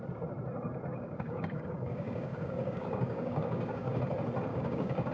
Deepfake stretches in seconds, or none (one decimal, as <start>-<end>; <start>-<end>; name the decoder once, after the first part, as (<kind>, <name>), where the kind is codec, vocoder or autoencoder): 0.9-4.0 (codec, DAC); 4.5-5.1